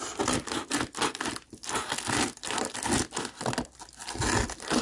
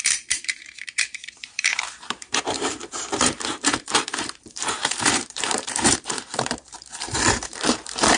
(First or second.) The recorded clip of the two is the first